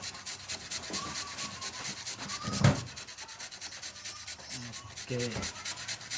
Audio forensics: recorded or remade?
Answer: recorded